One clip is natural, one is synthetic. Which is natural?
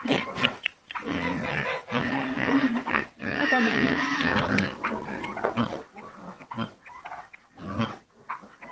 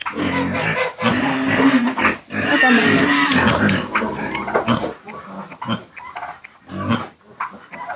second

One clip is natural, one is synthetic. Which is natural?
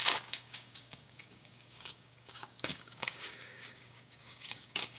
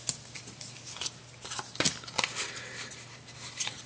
second